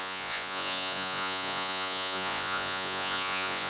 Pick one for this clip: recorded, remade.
remade